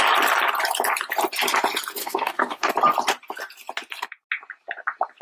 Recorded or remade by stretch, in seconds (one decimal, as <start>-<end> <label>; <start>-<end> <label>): 0.0-2.0 recorded; 2.0-2.7 remade; 2.7-5.2 recorded